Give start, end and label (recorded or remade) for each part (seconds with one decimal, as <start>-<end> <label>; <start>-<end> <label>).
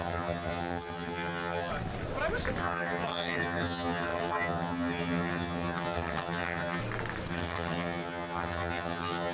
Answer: 0.0-1.7 remade; 1.7-2.6 recorded; 2.6-6.8 remade; 6.8-7.3 recorded; 7.3-9.3 remade